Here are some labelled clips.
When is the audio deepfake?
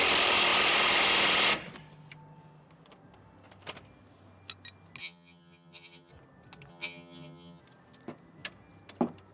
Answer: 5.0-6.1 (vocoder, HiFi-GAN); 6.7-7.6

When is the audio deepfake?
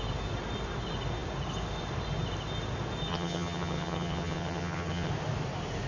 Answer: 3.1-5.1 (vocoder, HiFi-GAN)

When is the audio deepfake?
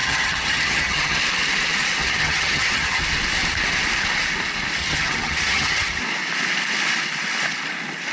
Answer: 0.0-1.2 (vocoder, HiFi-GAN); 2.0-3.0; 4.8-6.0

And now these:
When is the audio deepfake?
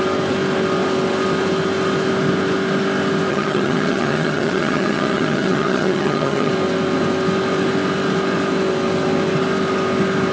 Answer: 3.3-6.5 (vocoder, HiFi-GAN)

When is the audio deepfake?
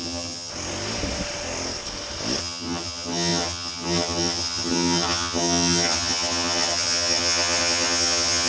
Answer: 0.0-0.5 (vocoder, HiFi-GAN); 2.4-8.5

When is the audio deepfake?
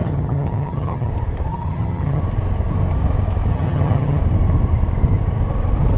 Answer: 0.0-1.1 (vocoder, HiFi-GAN); 1.5-2.2; 3.5-4.2